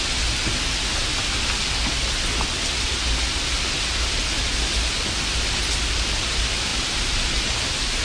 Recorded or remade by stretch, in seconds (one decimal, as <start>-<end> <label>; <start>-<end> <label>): 0.0-8.0 recorded